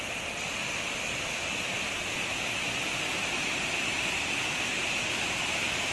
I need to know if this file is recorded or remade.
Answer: recorded